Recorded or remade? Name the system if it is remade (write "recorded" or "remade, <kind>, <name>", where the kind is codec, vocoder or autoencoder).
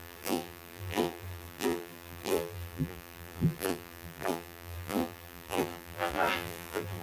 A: remade, vocoder, BigVGAN v2